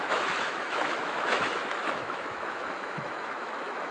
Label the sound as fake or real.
fake